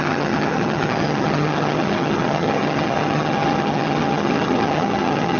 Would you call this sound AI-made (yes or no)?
yes